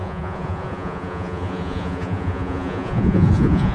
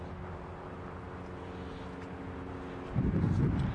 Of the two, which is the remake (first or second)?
first